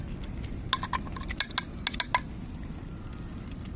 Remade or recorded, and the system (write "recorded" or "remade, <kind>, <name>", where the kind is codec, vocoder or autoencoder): recorded